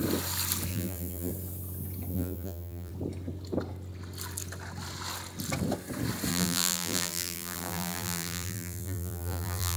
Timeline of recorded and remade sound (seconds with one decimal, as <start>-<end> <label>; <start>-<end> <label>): 0.0-0.7 recorded; 0.7-1.3 remade; 1.3-2.1 recorded; 2.1-2.9 remade; 2.9-6.3 recorded; 6.3-9.8 remade